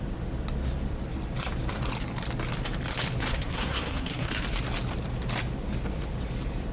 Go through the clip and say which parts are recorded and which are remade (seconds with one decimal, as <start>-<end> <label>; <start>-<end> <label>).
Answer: 0.0-3.3 recorded; 3.3-4.3 remade; 4.3-6.7 recorded